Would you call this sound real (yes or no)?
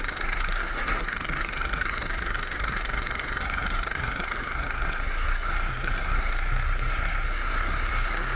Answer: no